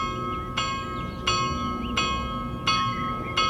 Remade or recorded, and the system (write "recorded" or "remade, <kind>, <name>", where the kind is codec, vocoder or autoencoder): recorded